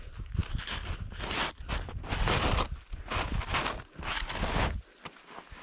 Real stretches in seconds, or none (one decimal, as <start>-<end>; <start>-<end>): 0.0-5.6

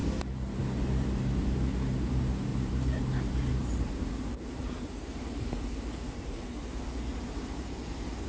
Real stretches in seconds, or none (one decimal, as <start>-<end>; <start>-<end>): 0.0-2.5; 3.0-3.5; 7.8-8.3

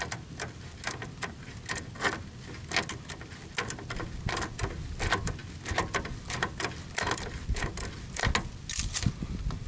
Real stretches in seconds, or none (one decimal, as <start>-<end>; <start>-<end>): 0.0-9.7

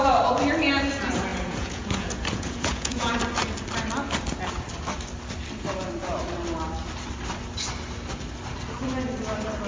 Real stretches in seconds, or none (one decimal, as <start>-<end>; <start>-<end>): 0.0-1.3; 3.2-9.7

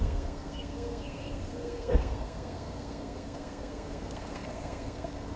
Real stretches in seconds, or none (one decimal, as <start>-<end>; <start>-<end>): none